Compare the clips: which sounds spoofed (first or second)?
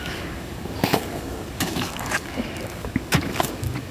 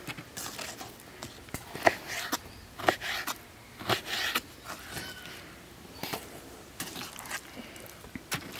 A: first